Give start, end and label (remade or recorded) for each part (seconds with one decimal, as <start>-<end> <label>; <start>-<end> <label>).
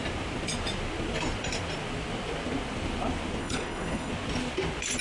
0.0-3.4 recorded; 3.4-4.1 remade; 4.1-5.0 recorded